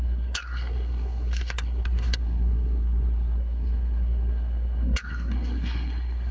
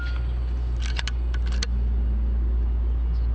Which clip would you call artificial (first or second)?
first